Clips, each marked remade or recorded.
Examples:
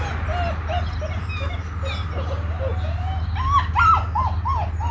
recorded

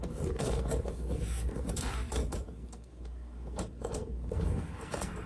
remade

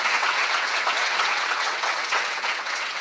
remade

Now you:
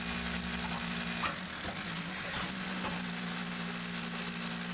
recorded